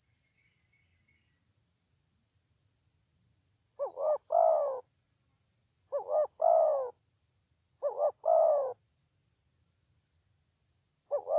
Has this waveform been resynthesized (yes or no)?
no